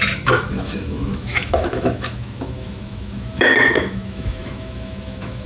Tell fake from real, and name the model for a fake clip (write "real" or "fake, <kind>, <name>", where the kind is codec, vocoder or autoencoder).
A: fake, autoencoder, DAC-VAE